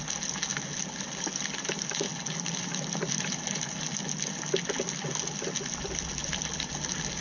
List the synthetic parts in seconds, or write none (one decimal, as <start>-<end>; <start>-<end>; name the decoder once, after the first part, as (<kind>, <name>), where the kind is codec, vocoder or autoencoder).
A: none